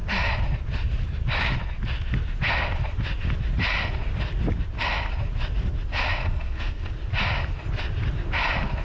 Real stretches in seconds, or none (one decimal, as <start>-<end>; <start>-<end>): 0.0-6.2; 6.9-8.8